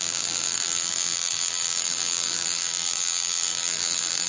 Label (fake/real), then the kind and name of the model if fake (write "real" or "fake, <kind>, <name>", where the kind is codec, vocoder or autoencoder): fake, vocoder, BigVGAN v2